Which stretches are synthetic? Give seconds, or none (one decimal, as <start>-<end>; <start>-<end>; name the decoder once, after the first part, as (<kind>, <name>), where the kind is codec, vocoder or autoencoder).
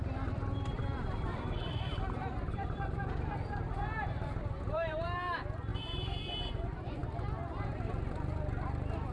0.0-5.7 (vocoder, BigVGAN v2); 6.4-7.0; 7.9-9.1